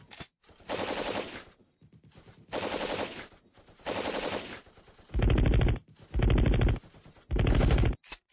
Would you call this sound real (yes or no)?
no